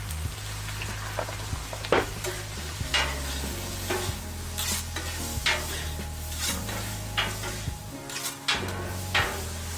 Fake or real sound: real